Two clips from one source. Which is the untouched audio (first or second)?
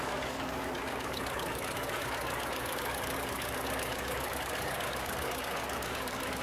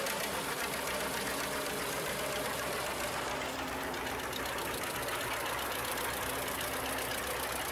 second